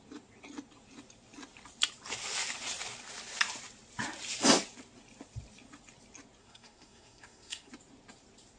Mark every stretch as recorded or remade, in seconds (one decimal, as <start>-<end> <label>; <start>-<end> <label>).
0.0-6.4 recorded; 6.4-7.7 remade; 7.7-8.6 recorded